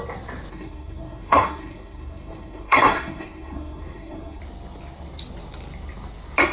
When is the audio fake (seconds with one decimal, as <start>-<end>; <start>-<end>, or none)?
0.5-4.4